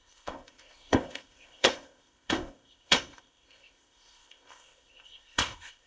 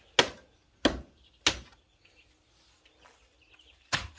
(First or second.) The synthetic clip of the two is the first